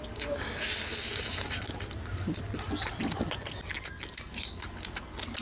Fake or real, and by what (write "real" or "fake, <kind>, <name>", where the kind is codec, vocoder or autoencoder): real